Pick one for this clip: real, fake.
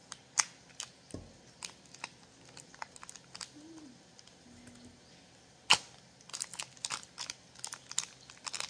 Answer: real